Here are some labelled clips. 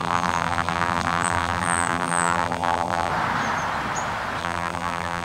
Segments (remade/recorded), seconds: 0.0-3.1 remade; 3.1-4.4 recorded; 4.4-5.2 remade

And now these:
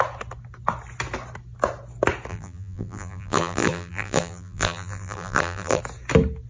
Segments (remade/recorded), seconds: 0.0-2.3 recorded; 2.3-5.8 remade; 5.8-6.5 recorded

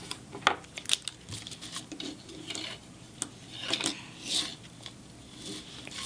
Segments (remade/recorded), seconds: 0.0-6.1 recorded

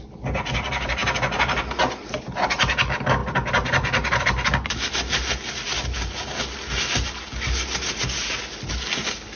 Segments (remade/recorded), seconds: 0.0-9.4 recorded

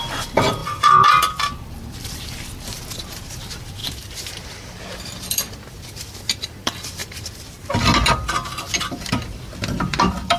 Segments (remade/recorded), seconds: 0.0-7.0 remade; 7.0-7.8 recorded; 7.8-10.4 remade

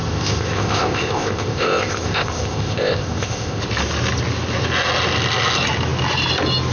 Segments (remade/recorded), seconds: 0.0-3.6 remade; 3.6-6.7 recorded